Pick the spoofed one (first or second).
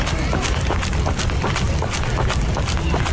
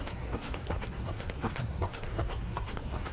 second